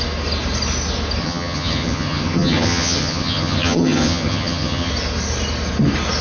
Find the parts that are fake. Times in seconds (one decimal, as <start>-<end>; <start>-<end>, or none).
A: 1.2-4.9